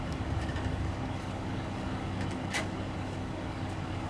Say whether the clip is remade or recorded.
remade